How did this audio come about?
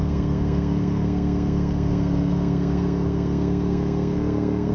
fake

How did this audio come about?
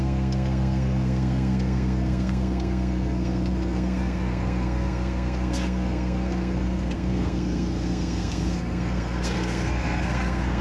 fake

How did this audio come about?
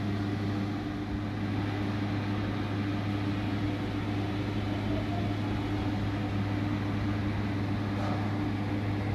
real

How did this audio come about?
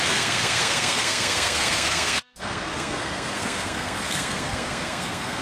fake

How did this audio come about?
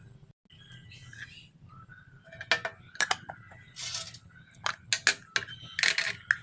real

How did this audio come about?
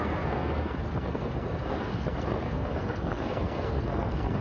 fake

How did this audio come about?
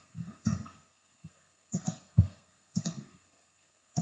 fake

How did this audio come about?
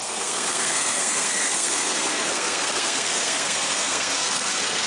fake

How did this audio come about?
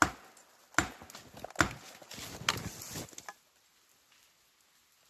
real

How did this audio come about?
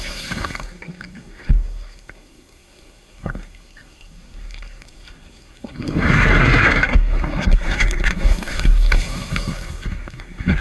fake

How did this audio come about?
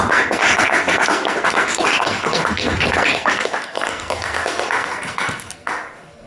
fake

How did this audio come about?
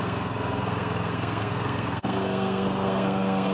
fake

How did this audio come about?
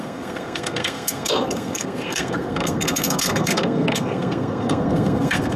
fake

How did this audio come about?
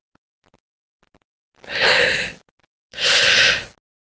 real